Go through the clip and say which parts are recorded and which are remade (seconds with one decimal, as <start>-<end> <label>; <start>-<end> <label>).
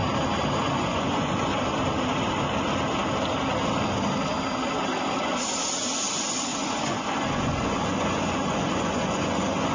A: 0.0-0.6 recorded; 0.6-1.5 remade; 1.5-5.2 recorded; 5.2-9.7 remade